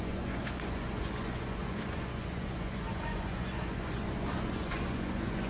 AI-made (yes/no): yes